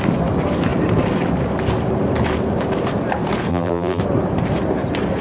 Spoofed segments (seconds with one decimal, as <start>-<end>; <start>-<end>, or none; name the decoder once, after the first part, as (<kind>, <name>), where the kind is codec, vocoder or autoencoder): 3.5-4.0 (vocoder, BigVGAN v2)